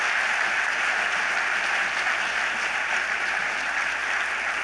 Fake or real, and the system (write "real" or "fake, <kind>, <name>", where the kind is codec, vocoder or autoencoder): real